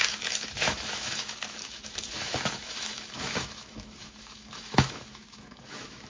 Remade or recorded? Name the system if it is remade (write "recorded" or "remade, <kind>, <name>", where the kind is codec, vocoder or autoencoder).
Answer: remade, autoencoder, DAC-VAE